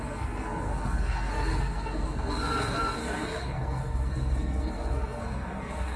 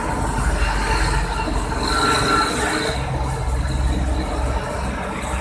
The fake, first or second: first